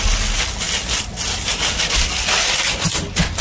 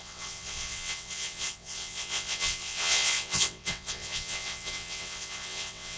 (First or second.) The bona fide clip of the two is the first